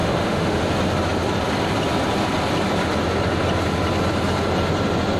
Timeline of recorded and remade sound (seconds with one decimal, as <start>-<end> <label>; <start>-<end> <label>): 0.0-0.6 remade; 0.6-5.2 recorded